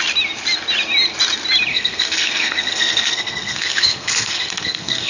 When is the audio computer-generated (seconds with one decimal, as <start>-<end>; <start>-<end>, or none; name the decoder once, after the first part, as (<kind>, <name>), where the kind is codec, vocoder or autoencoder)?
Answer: 1.7-5.1 (codec, SNAC)